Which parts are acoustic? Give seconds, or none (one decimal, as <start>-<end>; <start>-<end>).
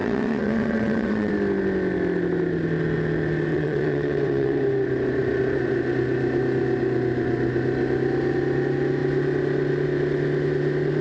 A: 1.3-3.5; 4.6-11.0